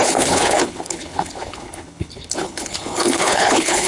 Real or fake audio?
fake